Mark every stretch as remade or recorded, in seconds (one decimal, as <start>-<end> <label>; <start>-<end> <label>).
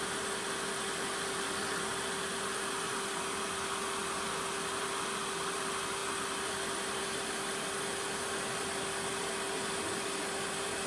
0.0-10.9 recorded